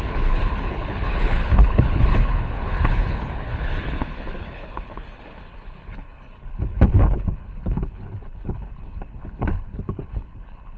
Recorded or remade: remade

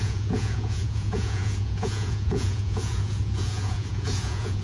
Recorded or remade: remade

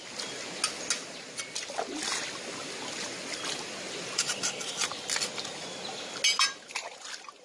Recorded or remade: recorded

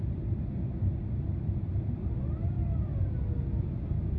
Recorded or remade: recorded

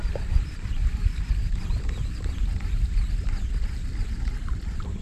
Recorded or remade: remade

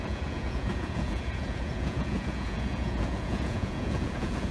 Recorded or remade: remade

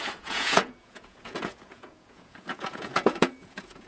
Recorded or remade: remade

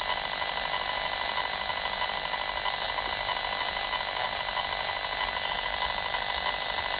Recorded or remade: recorded